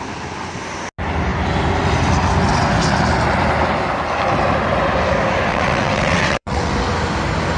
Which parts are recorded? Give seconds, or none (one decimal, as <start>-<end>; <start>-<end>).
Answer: 0.0-5.5; 6.7-7.6